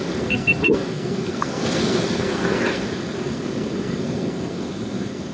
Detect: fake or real fake